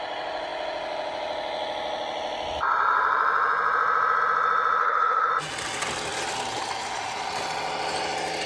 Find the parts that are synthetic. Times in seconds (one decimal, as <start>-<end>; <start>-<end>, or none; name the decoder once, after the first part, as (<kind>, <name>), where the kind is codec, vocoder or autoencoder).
4.8-5.3 (codec, HILCodec)